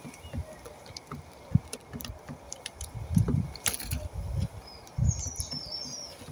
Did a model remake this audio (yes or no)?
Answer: no